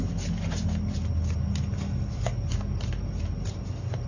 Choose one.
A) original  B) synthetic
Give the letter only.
A